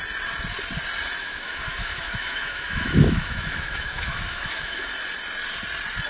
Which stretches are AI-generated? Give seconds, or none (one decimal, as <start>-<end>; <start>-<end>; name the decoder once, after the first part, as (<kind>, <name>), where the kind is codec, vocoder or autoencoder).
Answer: 1.2-4.9 (autoencoder, DAC-VAE)